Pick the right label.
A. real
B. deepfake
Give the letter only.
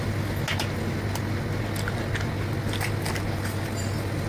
A